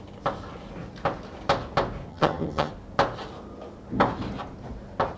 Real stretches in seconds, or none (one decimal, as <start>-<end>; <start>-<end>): 0.0-2.1; 2.7-5.2